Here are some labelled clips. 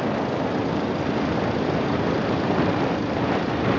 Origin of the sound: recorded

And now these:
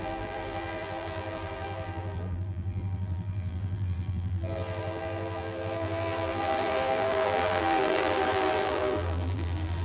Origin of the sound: remade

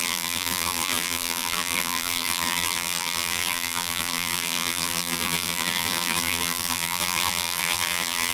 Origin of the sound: remade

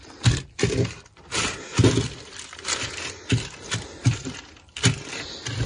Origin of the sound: remade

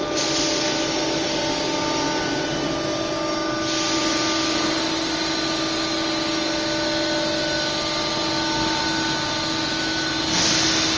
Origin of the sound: recorded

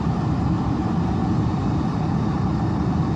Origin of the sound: remade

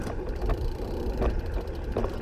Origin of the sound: remade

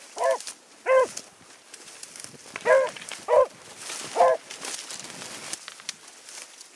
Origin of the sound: recorded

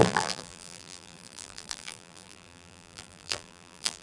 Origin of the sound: remade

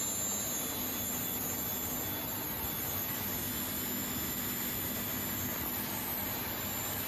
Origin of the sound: recorded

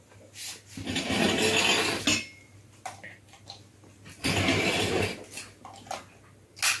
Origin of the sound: recorded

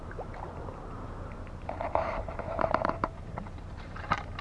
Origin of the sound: remade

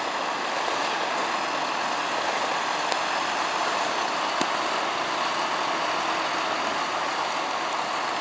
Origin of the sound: recorded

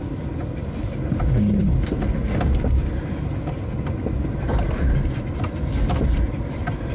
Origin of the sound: recorded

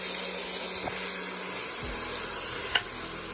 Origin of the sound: recorded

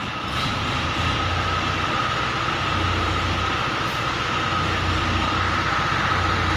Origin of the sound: recorded